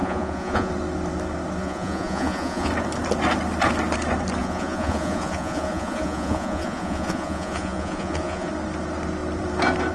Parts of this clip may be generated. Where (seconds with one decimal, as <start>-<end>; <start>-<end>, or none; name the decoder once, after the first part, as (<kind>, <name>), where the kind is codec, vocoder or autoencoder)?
0.0-0.7 (vocoder, Vocos); 1.6-2.7; 4.4-8.5